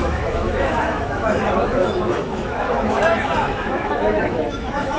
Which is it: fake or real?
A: fake